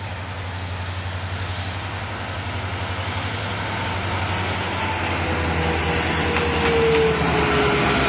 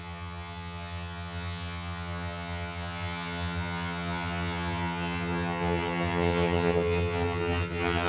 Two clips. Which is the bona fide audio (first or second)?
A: first